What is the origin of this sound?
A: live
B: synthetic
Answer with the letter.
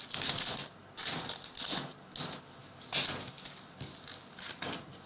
A